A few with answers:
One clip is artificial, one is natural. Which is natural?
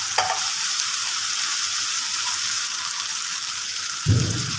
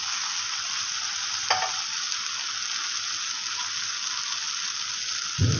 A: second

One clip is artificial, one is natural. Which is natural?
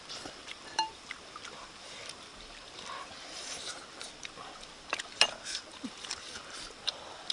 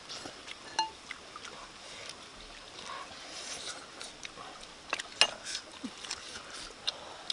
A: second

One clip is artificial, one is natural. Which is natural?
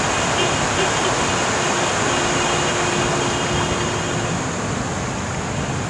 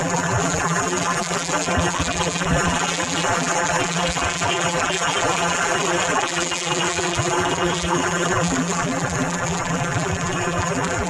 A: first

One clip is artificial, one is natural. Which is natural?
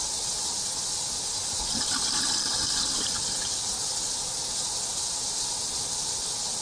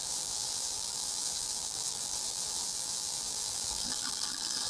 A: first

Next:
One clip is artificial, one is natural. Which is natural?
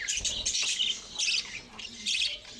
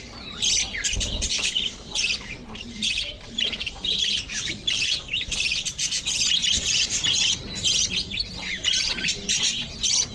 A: first